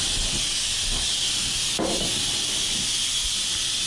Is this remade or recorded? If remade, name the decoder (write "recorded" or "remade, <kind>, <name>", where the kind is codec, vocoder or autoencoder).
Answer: recorded